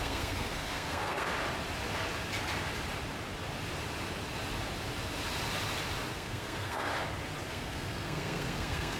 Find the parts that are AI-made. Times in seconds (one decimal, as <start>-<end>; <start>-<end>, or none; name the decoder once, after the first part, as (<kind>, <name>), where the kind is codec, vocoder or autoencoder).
0.0-1.3 (codec, SNAC); 6.1-6.9; 7.5-9.0